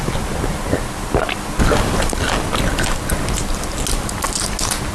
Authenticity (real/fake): real